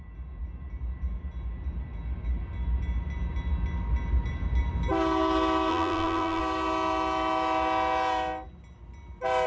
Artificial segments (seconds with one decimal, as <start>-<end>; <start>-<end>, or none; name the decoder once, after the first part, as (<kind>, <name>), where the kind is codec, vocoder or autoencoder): 5.7-6.4 (vocoder, BigVGAN v2)